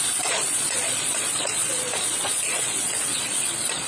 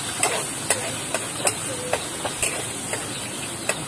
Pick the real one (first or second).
second